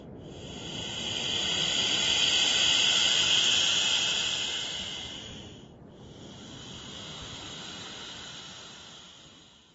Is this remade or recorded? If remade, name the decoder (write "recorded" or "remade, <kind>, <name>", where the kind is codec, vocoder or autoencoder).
recorded